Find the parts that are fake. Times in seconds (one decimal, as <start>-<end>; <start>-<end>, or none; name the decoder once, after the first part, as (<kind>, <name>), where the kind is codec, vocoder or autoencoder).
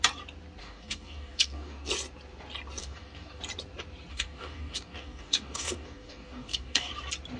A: 0.6-1.9 (codec, DAC); 2.8-3.4; 4.1-6.9